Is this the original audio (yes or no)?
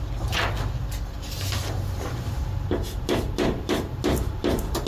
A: yes